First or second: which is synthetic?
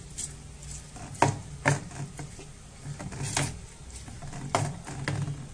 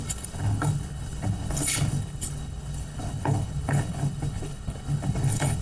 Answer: second